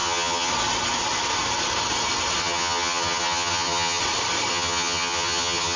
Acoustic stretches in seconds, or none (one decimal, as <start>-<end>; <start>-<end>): 0.5-2.4; 4.0-4.5